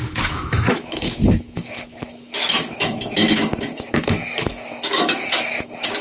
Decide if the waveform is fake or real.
fake